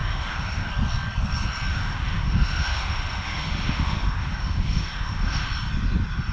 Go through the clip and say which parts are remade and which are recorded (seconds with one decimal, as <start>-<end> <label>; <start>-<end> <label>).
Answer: 0.0-0.7 remade; 0.7-1.7 recorded; 1.7-5.5 remade; 5.5-6.3 recorded